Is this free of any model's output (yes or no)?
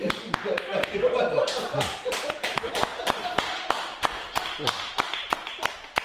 yes